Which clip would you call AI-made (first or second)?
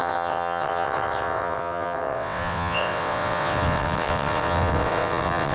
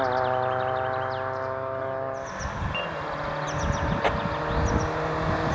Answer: first